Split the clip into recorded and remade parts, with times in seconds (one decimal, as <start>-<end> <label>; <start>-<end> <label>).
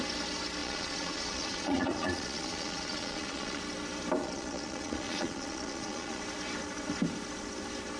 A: 0.0-0.6 recorded; 0.6-3.6 remade; 3.6-4.2 recorded; 4.2-6.2 remade; 6.2-8.0 recorded